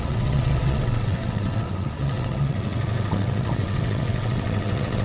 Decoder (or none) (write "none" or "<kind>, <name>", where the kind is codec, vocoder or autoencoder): vocoder, WaveNeXt